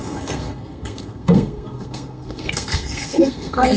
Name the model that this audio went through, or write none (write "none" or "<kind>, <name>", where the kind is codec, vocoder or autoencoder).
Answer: codec, SNAC